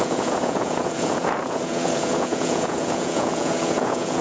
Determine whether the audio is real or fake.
fake